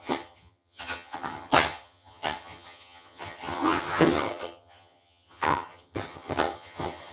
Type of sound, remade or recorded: remade